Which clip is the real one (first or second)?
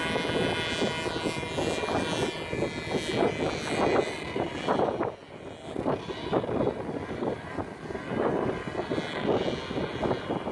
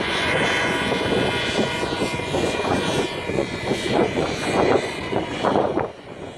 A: first